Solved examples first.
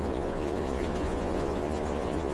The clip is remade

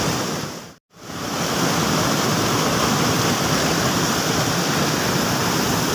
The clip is recorded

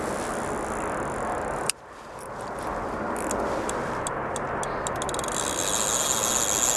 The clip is recorded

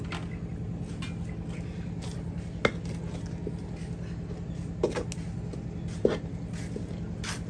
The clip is recorded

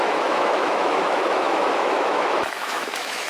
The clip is remade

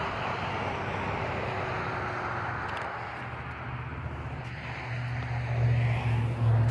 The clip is recorded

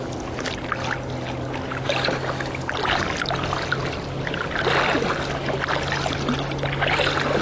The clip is recorded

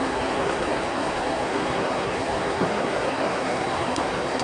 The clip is remade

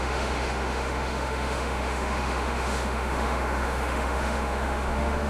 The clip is remade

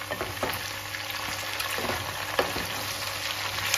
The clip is recorded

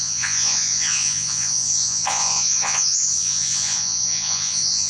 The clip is remade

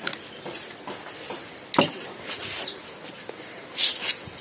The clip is recorded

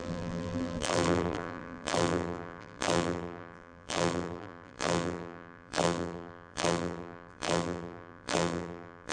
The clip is remade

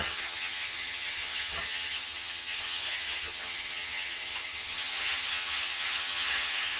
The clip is remade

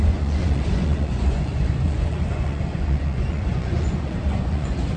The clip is remade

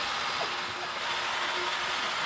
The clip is recorded